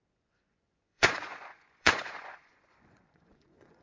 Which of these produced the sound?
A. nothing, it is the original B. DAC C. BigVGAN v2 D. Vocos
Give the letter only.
D